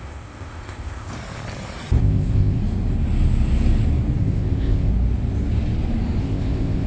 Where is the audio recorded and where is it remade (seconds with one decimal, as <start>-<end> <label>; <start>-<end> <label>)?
0.0-1.1 remade; 1.1-2.0 recorded; 2.0-2.6 remade; 2.6-4.2 recorded; 4.2-4.9 remade; 4.9-6.2 recorded; 6.2-6.9 remade

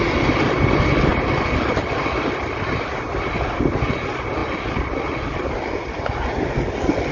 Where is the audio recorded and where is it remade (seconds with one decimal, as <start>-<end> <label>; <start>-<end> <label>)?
0.0-7.1 recorded

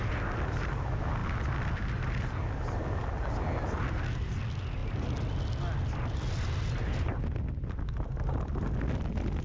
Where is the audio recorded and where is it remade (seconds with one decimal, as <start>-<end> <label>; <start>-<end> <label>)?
0.0-9.4 recorded

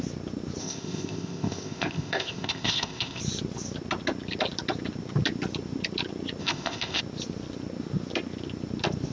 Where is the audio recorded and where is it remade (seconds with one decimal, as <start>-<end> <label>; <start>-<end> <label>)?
0.0-0.6 recorded; 0.6-3.2 remade; 3.2-6.4 recorded; 6.4-7.0 remade; 7.0-9.1 recorded

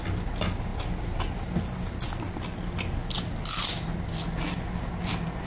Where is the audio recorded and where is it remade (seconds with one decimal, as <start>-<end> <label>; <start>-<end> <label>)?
0.0-5.5 recorded

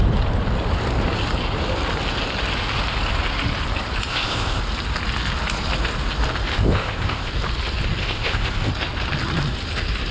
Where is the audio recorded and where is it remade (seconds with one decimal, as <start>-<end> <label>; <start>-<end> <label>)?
0.0-4.1 recorded; 4.1-4.6 remade; 4.6-6.5 recorded; 6.5-7.3 remade; 7.3-8.0 recorded; 8.0-8.7 remade; 8.7-10.1 recorded